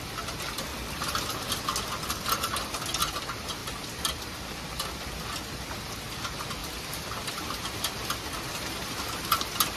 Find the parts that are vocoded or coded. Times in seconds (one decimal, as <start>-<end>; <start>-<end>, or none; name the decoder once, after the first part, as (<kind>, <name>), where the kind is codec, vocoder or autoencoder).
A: 0.7-1.6 (vocoder, BigVGAN v2); 6.6-7.8